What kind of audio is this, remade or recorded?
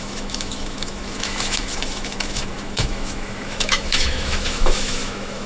remade